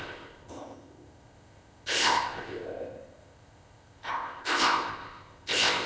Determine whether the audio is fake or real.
fake